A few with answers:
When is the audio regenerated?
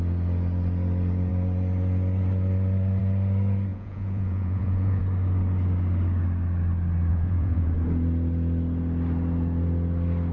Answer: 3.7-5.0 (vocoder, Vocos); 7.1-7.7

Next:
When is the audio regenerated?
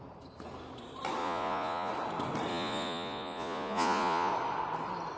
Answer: 1.2-1.9 (vocoder, Vocos); 2.5-4.3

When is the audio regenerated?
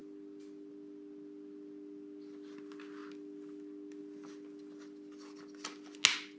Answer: none